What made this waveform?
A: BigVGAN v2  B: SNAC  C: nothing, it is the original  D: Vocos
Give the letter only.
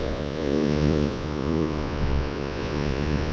D